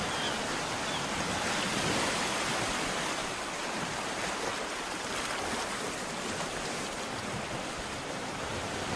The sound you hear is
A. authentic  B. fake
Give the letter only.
A